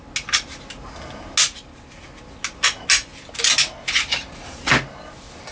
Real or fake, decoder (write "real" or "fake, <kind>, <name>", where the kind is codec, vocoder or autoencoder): real